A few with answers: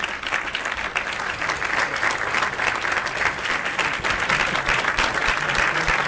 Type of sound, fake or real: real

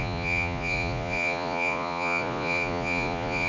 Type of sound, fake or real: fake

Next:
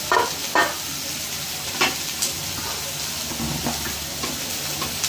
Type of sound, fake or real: real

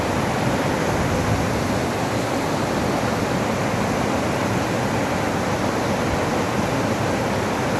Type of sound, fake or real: real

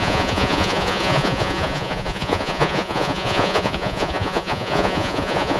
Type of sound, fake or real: fake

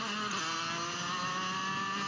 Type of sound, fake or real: real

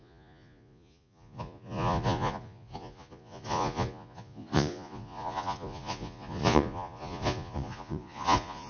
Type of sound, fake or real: fake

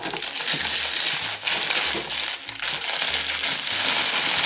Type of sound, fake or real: real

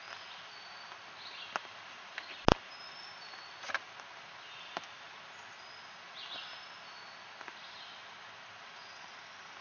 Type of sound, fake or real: real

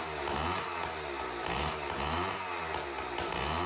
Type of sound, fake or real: real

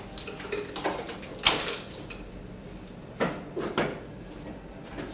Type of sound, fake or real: real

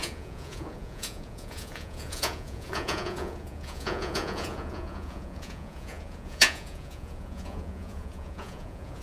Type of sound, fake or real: fake